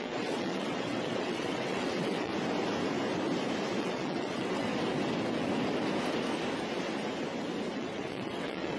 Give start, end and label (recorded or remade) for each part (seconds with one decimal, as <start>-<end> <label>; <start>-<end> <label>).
0.0-2.3 remade; 2.3-3.8 recorded; 3.8-4.7 remade; 4.7-7.7 recorded; 7.7-8.8 remade